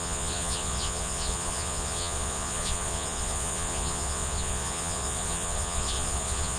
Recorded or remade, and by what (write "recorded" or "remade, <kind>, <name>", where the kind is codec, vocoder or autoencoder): remade, vocoder, Vocos